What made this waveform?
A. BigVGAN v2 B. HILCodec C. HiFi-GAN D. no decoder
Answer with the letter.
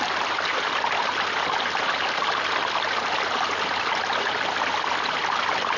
D